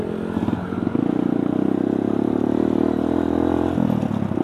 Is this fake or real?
real